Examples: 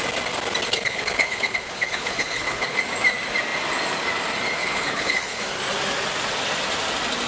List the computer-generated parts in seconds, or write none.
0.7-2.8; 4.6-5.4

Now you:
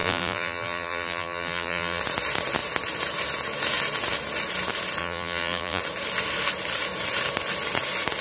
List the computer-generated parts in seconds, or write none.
0.0-2.0; 5.0-5.8

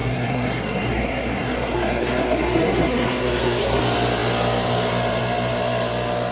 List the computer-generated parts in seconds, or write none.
0.0-3.8

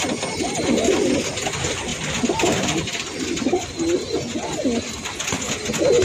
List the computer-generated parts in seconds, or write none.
none

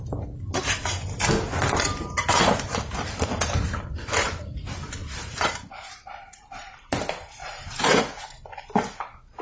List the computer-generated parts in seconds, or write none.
1.9-3.8; 5.0-6.7; 7.4-8.0

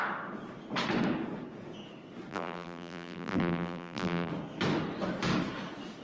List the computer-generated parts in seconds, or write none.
2.3-4.3

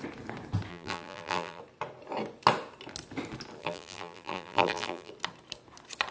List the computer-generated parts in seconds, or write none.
0.7-1.6; 3.6-5.1

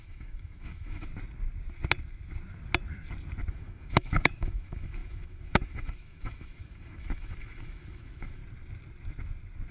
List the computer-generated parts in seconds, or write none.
0.0-1.1; 3.5-8.4